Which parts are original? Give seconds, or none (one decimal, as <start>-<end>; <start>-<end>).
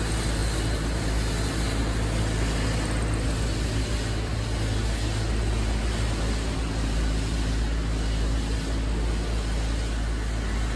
0.0-10.8